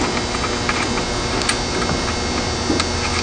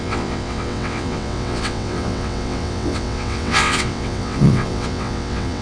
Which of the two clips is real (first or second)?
first